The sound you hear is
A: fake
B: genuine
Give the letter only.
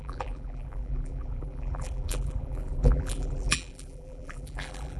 A